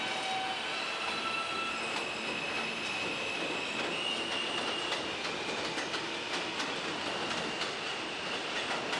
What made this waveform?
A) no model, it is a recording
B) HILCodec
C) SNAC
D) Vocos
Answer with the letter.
A